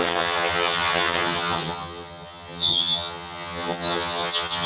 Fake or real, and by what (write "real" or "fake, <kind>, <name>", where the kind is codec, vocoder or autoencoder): fake, vocoder, HiFi-GAN